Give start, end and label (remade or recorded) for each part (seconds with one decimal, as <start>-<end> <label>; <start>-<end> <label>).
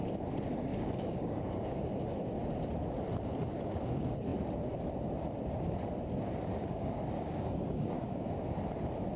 0.0-0.7 recorded; 0.7-1.8 remade; 1.8-6.5 recorded; 6.5-8.3 remade; 8.3-9.2 recorded